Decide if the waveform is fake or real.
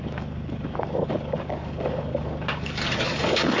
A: fake